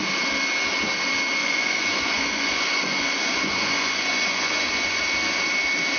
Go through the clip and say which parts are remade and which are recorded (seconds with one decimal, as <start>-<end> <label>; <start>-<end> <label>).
0.0-1.4 recorded; 1.4-5.0 remade; 5.0-6.0 recorded